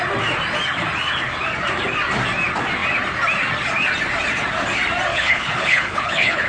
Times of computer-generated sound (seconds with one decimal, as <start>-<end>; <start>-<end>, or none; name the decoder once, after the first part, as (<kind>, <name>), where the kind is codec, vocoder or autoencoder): 5.1-6.5 (codec, HILCodec)